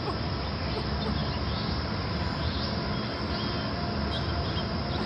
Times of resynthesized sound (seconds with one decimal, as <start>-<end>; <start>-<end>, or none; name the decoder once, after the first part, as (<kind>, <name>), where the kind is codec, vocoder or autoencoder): none